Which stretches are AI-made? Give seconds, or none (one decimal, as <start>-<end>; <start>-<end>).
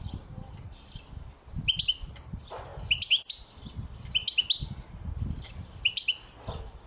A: none